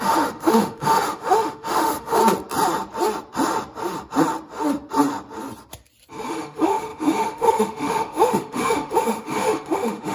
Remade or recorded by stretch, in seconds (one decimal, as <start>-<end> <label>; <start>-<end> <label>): 0.0-2.2 remade; 2.2-6.3 recorded; 6.3-10.1 remade